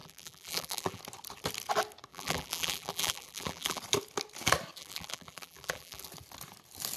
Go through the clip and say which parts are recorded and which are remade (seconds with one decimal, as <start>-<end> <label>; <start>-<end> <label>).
0.0-1.0 remade; 1.0-2.1 recorded; 2.1-3.8 remade; 3.8-4.8 recorded; 4.8-6.1 remade; 6.1-7.0 recorded